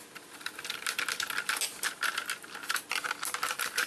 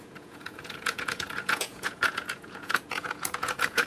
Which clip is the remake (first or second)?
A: second